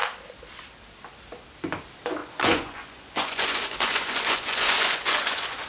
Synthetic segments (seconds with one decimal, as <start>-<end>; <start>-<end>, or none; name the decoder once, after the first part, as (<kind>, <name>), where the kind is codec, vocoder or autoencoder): 2.2-5.7 (vocoder, Vocos)